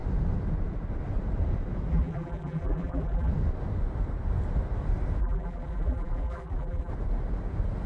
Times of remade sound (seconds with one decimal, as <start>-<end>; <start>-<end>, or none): 1.9-3.3; 5.2-6.9